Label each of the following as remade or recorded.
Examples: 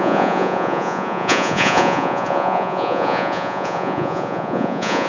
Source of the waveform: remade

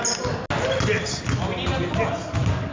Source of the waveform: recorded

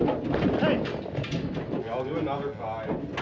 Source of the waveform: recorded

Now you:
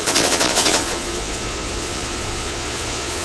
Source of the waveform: remade